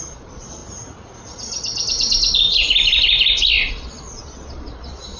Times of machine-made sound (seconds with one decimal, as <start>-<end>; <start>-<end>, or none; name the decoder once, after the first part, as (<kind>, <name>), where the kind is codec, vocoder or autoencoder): 0.0-0.6 (vocoder, Vocos); 3.7-5.2